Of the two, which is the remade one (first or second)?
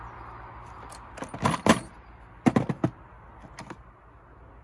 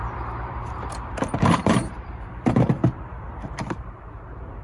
second